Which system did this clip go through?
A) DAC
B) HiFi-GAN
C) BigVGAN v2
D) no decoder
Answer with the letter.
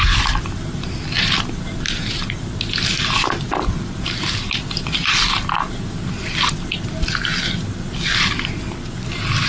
D